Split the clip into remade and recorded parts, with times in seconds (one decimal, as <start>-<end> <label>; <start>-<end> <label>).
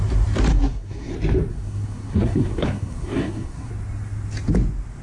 0.0-0.5 recorded; 0.5-1.1 remade; 1.1-1.5 recorded; 1.5-3.7 remade; 3.7-5.0 recorded